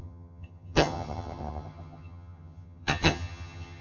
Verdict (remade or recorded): remade